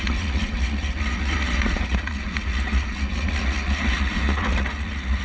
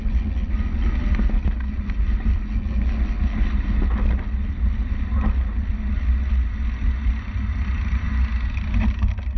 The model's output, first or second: first